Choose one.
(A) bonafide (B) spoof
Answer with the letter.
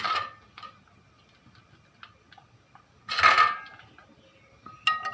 A